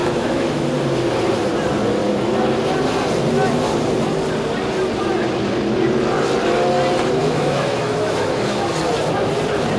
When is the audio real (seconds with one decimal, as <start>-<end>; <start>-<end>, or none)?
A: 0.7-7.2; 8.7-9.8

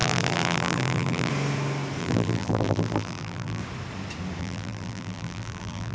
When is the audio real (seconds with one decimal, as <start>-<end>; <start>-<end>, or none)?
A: 1.3-2.0; 3.6-4.4

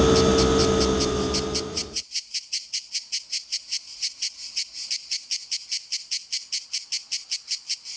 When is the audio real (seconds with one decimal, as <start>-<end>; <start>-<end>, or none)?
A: 0.0-1.7; 4.9-8.0

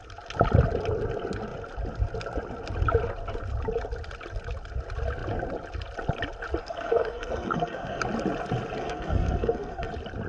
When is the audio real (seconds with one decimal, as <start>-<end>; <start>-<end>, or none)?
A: 0.0-6.6; 8.0-8.8; 9.9-10.3

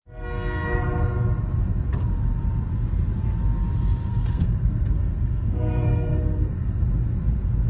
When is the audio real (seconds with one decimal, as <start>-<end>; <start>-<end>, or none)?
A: 0.0-4.1; 6.8-7.7

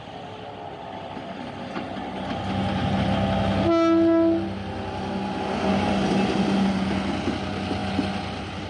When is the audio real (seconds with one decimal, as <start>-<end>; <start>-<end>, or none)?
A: 0.0-8.7

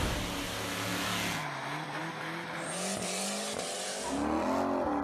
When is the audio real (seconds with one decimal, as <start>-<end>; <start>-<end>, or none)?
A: 0.0-5.0